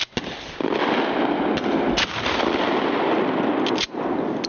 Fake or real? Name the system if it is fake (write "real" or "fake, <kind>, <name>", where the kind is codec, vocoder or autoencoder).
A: real